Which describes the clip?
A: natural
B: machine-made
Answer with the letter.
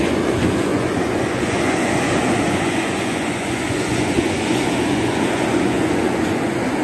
B